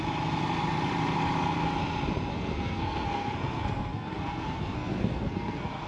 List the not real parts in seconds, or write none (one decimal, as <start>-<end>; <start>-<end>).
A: 2.3-5.9